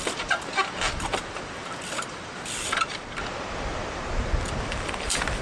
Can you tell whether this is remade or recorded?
remade